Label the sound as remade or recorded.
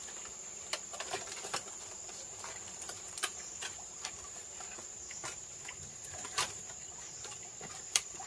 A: remade